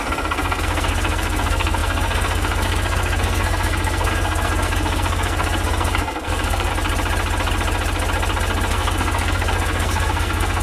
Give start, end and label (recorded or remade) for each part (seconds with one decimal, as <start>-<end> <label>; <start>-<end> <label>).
0.0-6.7 remade; 6.7-8.7 recorded; 8.7-10.6 remade